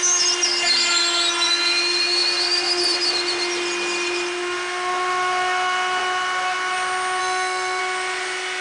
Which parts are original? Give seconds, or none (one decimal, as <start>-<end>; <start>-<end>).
0.0-7.2; 7.8-8.6